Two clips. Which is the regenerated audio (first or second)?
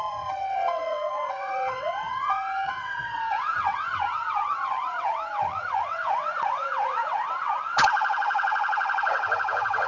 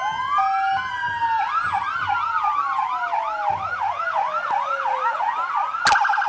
first